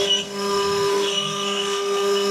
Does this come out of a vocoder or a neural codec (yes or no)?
yes